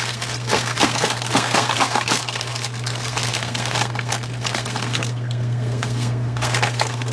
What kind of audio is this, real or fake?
fake